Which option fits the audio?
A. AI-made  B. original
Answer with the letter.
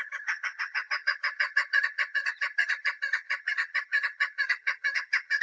A